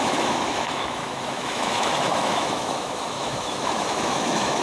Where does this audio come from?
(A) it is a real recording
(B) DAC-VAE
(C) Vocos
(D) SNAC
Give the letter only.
B